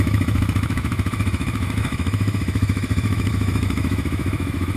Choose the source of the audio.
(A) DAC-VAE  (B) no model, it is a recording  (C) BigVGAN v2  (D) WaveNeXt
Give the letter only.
A